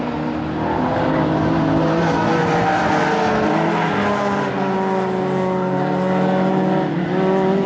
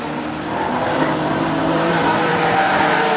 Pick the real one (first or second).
first